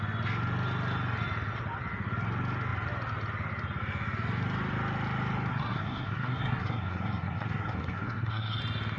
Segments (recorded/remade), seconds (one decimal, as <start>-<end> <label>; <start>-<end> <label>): 0.0-5.5 recorded; 5.5-8.6 remade; 8.6-9.0 recorded